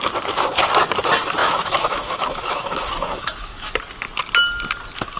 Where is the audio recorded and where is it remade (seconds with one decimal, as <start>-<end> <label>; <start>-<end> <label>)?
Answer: 0.0-1.4 recorded; 1.4-3.7 remade; 3.7-5.2 recorded